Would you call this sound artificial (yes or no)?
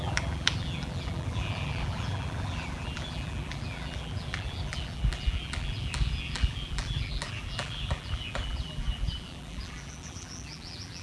yes